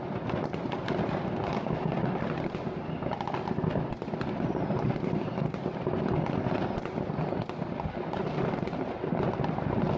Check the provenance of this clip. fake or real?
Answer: real